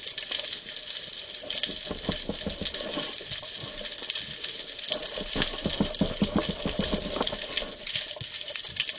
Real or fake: real